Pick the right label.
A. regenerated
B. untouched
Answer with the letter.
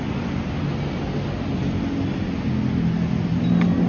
B